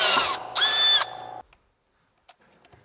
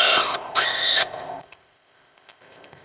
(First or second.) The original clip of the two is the first